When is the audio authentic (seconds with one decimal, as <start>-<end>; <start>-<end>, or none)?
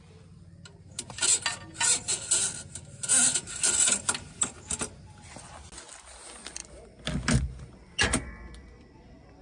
0.0-9.4